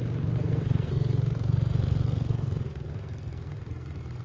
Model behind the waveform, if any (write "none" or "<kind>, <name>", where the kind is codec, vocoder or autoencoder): codec, SNAC